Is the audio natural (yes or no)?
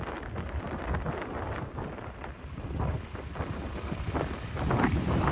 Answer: yes